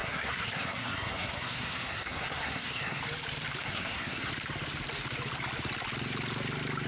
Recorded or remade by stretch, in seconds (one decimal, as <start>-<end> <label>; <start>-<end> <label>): 0.0-3.0 remade; 3.0-3.6 recorded; 3.6-4.3 remade; 4.3-6.9 recorded